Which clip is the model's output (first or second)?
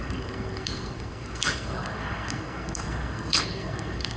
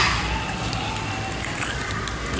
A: first